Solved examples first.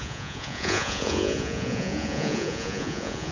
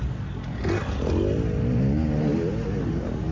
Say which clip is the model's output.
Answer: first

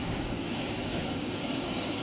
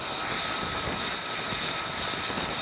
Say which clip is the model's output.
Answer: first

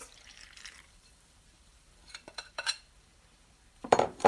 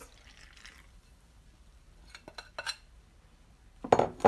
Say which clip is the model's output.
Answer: first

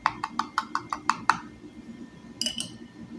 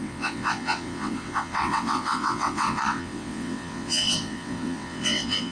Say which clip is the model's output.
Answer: second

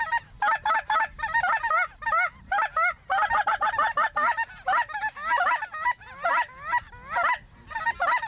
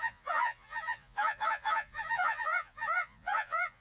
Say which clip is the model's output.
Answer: second